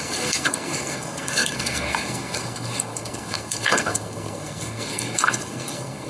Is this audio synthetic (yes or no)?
yes